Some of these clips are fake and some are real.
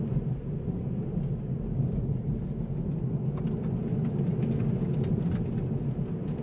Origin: real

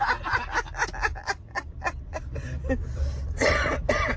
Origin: real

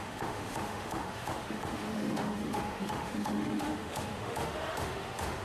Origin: fake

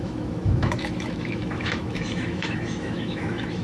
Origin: fake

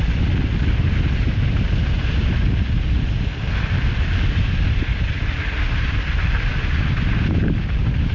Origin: real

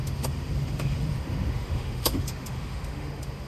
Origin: fake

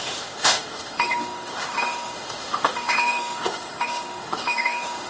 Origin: fake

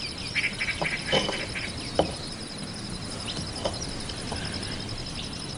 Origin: real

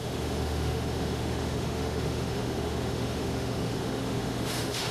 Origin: fake